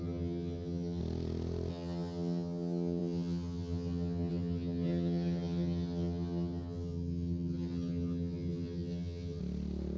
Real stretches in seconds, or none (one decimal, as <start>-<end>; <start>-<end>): 1.0-1.7; 9.4-10.0